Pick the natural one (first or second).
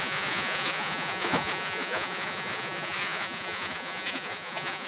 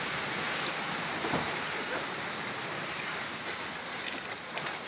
second